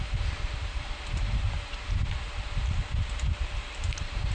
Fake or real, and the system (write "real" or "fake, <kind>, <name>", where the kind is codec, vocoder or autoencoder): fake, vocoder, BigVGAN v2